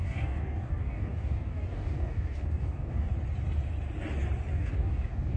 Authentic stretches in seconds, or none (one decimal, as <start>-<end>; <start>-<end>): 3.1-4.5